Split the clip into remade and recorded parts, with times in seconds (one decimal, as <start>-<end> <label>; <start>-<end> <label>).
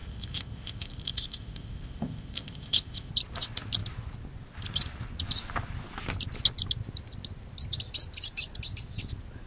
0.0-3.1 remade; 3.1-9.5 recorded